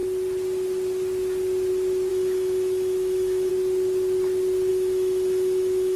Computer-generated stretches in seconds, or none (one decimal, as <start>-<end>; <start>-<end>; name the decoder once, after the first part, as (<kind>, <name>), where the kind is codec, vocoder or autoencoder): 2.1-3.5 (autoencoder, DAC-VAE); 4.7-6.0

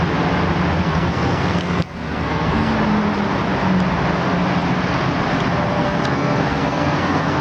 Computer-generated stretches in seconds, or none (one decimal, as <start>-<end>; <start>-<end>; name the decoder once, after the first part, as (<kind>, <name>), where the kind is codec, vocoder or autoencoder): 0.8-2.7 (codec, SNAC); 5.7-7.4